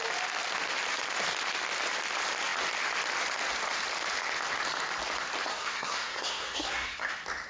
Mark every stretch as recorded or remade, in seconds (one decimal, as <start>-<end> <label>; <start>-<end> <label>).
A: 0.0-5.5 recorded; 5.5-7.1 remade; 7.1-7.5 recorded